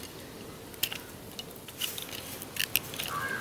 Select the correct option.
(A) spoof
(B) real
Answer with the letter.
B